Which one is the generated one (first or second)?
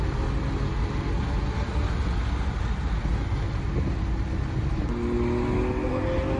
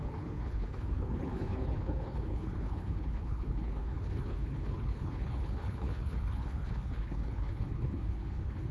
second